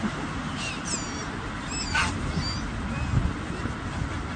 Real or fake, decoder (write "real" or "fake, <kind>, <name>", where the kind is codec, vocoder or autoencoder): real